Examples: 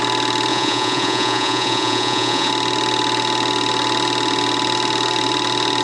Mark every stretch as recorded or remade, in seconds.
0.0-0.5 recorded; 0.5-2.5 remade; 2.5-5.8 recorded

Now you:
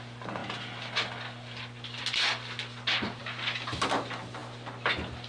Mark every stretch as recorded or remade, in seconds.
0.0-5.3 recorded

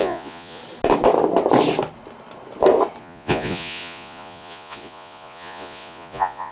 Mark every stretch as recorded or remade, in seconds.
0.0-0.6 remade; 0.6-3.0 recorded; 3.0-6.5 remade

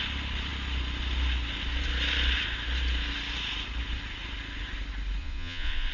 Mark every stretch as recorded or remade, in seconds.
0.0-5.2 recorded; 5.2-5.9 remade

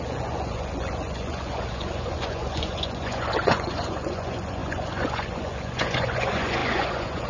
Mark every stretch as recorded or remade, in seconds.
0.0-7.3 remade

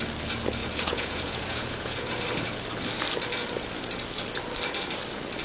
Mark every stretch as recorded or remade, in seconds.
0.0-0.6 recorded; 0.6-2.1 remade; 2.1-5.4 recorded

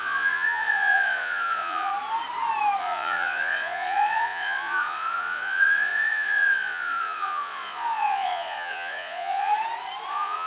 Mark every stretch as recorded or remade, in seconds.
0.0-1.9 remade; 1.9-2.8 recorded; 2.8-9.5 remade; 9.5-10.1 recorded; 10.1-10.5 remade